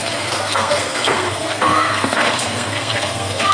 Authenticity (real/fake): fake